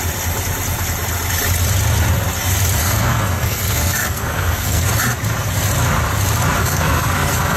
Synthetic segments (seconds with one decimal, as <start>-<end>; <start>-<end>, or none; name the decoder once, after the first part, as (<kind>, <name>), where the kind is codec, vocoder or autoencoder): 2.8-4.9 (codec, SNAC); 6.6-7.6